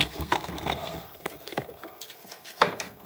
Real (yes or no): no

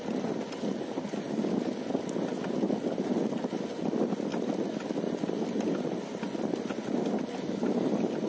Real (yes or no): yes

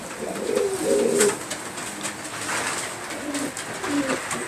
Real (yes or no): yes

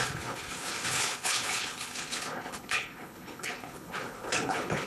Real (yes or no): no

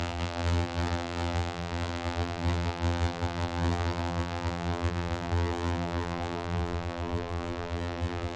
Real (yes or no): no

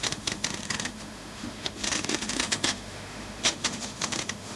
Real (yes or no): no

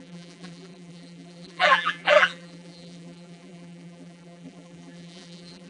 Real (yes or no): no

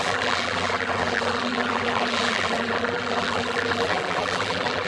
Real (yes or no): no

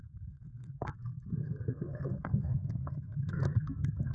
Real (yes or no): no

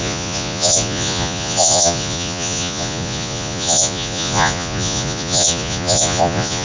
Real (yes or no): no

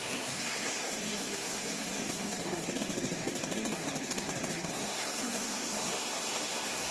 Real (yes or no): no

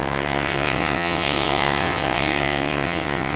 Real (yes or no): no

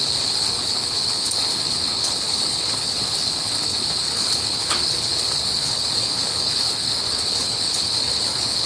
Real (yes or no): no